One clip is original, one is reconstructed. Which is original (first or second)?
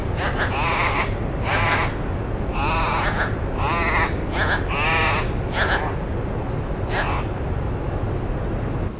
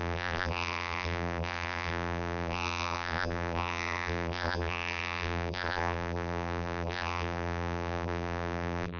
first